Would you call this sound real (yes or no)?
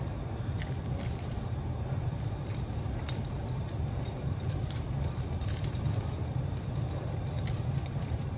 no